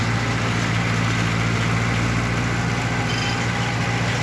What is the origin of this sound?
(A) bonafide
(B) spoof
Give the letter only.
A